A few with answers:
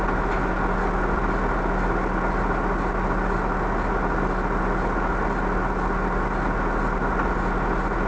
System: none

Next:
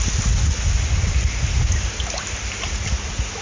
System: none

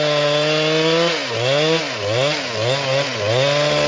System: none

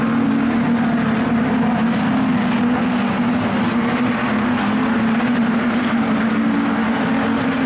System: none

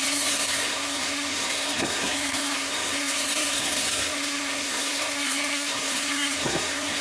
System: codec, SNAC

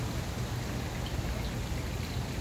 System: none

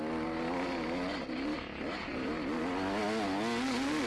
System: none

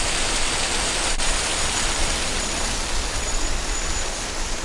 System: none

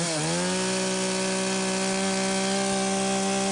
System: none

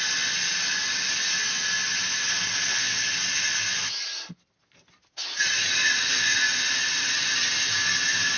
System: none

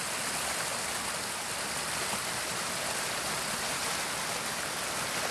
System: none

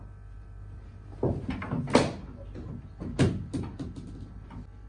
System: none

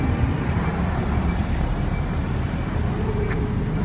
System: none